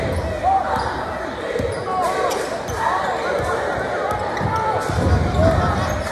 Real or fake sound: real